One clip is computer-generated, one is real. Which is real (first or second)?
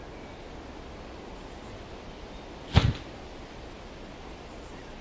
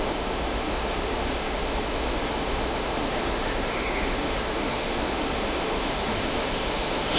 first